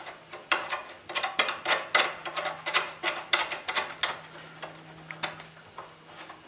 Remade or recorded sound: recorded